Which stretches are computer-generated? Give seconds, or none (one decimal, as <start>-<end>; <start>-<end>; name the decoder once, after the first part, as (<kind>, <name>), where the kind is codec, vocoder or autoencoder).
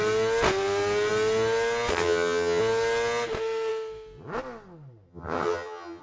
1.9-2.6 (vocoder, HiFi-GAN); 5.1-6.0